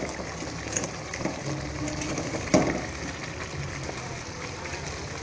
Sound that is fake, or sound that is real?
real